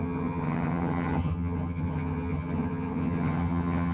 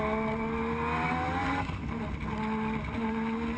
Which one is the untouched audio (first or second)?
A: second